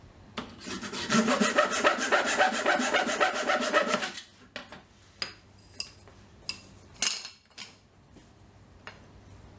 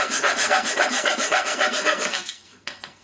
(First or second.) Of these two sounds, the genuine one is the first